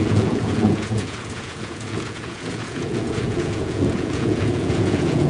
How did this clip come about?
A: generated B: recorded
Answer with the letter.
A